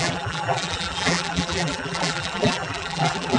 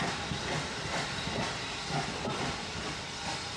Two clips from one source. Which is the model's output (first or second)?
first